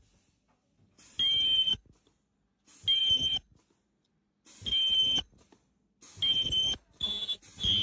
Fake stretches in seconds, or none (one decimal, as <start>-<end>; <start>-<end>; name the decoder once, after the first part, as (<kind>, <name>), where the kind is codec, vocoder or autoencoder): none